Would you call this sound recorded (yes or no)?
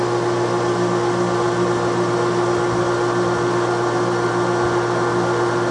yes